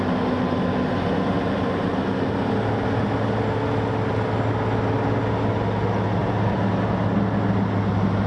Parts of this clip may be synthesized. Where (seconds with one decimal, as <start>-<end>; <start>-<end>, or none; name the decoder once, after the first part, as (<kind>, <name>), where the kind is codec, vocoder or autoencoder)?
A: 6.2-6.8 (vocoder, BigVGAN v2)

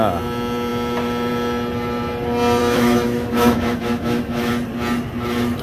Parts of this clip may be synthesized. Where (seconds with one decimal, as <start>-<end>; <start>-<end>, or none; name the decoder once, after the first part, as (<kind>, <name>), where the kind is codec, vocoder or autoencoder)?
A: 2.6-4.5 (autoencoder, DAC-VAE)